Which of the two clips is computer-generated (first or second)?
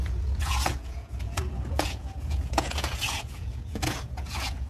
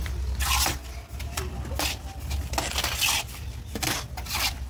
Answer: first